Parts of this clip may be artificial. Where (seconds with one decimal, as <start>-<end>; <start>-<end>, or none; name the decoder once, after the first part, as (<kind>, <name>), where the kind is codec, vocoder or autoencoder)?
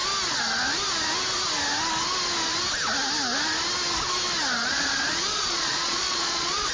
4.7-6.7 (vocoder, Vocos)